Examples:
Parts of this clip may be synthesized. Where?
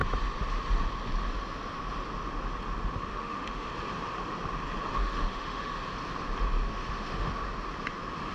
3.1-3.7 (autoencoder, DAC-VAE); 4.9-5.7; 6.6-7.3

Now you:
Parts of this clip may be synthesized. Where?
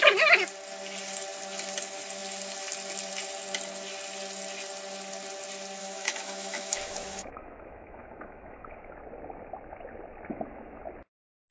5.8-8.9 (autoencoder, DAC-VAE); 10.3-10.8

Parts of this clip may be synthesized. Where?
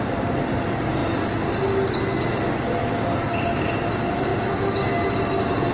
none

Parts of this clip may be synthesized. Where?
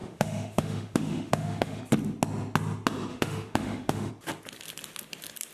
0.0-1.8 (autoencoder, DAC-VAE); 3.1-4.1